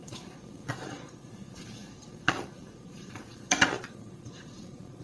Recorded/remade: remade